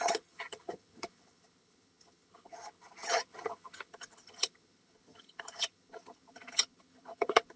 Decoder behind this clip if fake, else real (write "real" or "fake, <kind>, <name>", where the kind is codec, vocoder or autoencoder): fake, vocoder, HiFi-GAN